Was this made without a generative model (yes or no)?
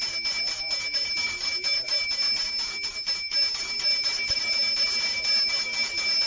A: yes